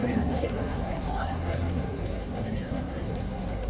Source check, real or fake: fake